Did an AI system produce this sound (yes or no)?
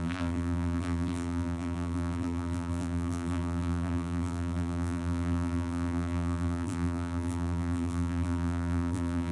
yes